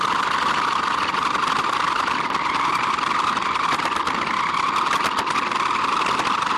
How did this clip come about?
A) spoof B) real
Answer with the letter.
B